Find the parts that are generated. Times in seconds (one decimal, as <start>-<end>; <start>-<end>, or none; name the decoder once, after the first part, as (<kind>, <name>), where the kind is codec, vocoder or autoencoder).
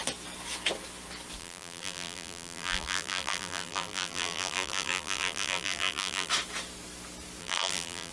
1.4-6.3 (vocoder, BigVGAN v2); 7.4-8.1